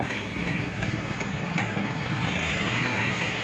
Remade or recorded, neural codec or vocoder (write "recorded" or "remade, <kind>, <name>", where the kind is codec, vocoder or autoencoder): remade, codec, SNAC